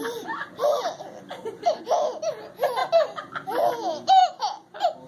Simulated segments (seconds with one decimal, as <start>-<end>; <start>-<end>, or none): none